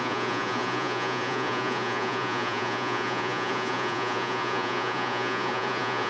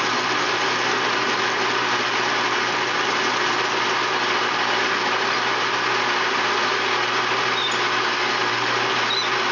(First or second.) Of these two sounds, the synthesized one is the first